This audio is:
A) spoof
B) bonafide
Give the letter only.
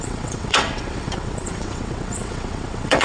A